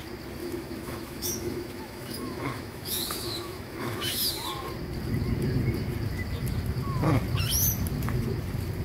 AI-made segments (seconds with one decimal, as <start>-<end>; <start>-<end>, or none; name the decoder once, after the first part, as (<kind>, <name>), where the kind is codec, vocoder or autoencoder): 0.4-4.3 (autoencoder, DAC-VAE)